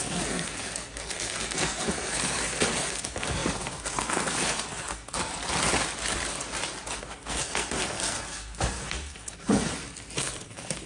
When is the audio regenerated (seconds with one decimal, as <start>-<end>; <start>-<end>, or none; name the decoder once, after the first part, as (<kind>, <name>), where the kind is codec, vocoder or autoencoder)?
0.0-5.3 (codec, SNAC); 7.0-9.7; 10.2-10.9